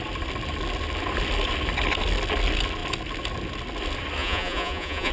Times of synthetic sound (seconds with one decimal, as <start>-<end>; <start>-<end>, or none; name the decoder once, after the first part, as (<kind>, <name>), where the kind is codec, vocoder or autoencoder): 4.2-5.1 (vocoder, Vocos)

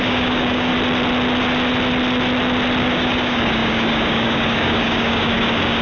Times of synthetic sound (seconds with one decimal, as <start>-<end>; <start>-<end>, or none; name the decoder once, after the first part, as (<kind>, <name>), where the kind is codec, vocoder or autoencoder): 0.0-0.7 (codec, DAC); 2.8-5.8

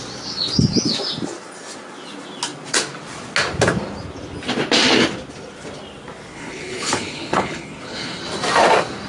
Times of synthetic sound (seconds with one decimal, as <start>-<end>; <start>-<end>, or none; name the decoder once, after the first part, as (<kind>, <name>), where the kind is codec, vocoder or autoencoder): 6.3-8.2 (codec, HILCodec)

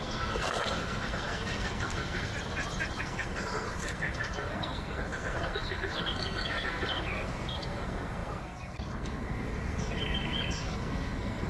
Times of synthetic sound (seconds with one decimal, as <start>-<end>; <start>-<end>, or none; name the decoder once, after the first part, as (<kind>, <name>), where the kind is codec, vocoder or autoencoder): 0.0-2.3 (codec, SNAC); 3.0-11.5

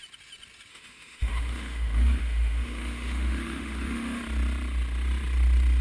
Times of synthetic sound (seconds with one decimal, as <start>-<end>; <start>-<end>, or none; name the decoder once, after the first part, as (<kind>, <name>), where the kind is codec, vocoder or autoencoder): 0.7-4.2 (autoencoder, DAC-VAE)

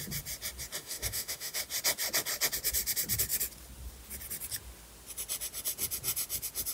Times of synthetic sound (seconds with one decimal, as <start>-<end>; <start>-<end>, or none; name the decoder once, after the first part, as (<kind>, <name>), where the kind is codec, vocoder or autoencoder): 0.8-1.6 (autoencoder, DAC-VAE)